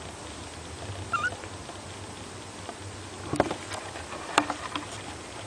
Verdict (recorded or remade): recorded